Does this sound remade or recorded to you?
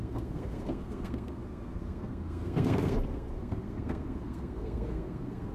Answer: remade